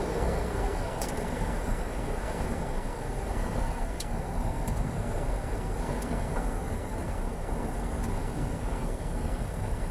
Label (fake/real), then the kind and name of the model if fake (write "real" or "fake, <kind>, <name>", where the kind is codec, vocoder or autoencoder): fake, codec, SNAC